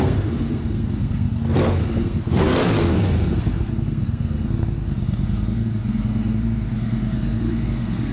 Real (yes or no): no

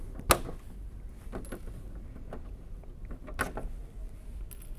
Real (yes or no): yes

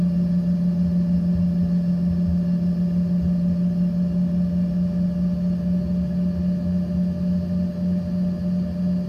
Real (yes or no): yes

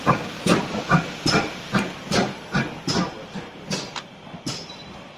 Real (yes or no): no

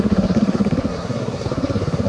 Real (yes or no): no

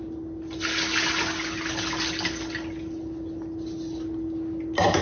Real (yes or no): yes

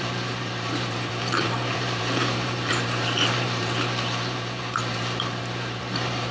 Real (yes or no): no